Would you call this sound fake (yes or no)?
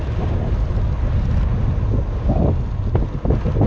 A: no